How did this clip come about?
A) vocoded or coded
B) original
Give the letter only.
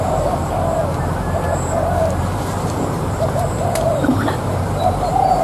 A